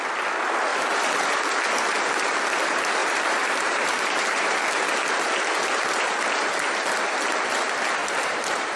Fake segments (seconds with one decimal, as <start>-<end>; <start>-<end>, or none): 3.0-4.8; 8.0-8.8